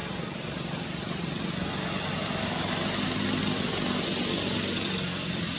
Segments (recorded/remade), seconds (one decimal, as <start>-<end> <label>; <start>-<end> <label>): 0.0-3.4 recorded; 3.4-5.6 remade